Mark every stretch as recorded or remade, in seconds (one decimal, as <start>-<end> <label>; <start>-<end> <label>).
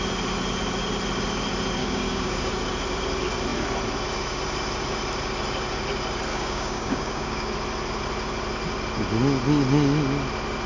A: 0.0-1.8 recorded; 1.8-2.5 remade; 2.5-6.3 recorded; 6.3-7.5 remade; 7.5-10.7 recorded